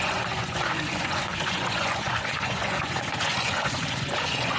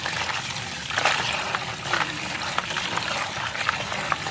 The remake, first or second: first